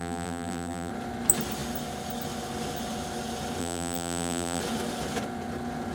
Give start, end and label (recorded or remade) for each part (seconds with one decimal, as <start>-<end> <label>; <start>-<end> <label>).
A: 0.0-0.9 remade; 0.9-3.6 recorded; 3.6-4.6 remade; 4.6-5.9 recorded

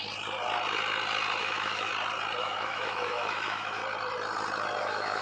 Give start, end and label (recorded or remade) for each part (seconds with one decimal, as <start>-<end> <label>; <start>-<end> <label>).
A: 0.0-1.4 recorded; 1.4-1.9 remade; 1.9-2.4 recorded; 2.4-3.8 remade; 3.8-4.8 recorded; 4.8-5.2 remade

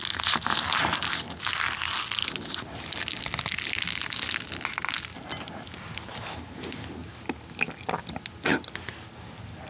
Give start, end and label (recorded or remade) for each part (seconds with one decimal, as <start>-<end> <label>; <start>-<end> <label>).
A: 0.0-9.7 recorded

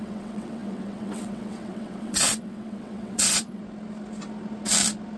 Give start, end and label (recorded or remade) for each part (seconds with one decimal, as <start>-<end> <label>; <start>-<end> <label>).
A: 0.0-3.6 remade; 3.6-5.2 recorded